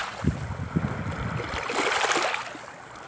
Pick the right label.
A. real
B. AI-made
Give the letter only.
A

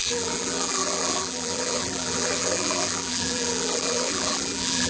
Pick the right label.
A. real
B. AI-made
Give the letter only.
B